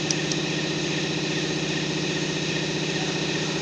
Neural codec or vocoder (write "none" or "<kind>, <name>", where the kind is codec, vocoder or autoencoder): none